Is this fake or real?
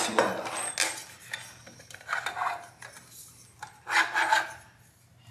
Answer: real